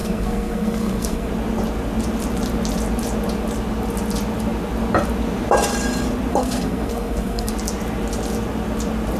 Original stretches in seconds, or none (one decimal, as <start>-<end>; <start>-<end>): 1.3-6.3; 7.5-9.2